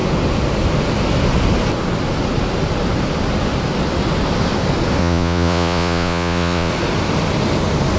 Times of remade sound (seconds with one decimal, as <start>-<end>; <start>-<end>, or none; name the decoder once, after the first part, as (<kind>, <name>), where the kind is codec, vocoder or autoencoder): 5.0-6.7 (vocoder, Vocos)